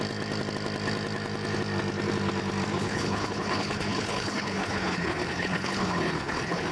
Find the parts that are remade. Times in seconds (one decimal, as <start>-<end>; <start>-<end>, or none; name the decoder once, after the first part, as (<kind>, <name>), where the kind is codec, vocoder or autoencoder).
2.7-6.7 (codec, HILCodec)